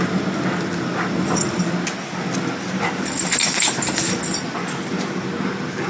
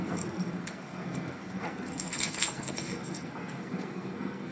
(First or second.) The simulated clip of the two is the second